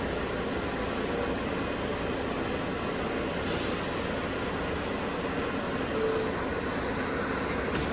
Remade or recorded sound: recorded